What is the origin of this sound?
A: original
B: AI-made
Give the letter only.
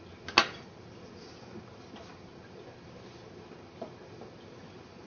A